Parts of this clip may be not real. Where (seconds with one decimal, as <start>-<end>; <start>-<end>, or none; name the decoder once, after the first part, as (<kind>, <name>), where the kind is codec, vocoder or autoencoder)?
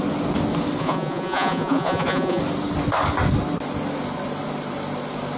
0.8-2.4 (vocoder, Vocos)